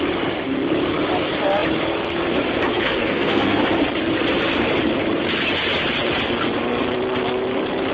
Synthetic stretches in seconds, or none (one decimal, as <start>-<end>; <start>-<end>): 2.7-3.6